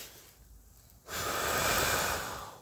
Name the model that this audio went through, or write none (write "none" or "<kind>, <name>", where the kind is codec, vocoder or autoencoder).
none